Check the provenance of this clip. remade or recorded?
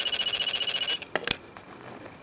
recorded